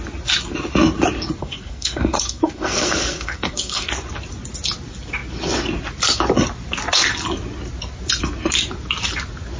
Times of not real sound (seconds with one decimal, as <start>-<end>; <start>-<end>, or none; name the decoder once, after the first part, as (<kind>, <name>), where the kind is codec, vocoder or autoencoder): 1.4-3.9 (codec, SNAC)